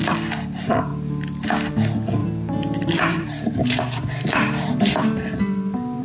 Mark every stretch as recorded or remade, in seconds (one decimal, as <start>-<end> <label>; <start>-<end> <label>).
0.0-2.2 recorded; 2.2-6.0 remade